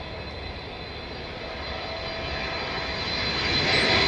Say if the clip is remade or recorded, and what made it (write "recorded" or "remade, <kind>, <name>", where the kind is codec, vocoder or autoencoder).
recorded